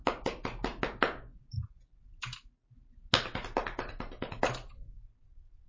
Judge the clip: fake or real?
real